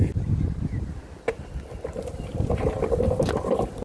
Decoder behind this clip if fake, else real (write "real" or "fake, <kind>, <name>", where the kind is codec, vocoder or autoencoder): fake, vocoder, BigVGAN v2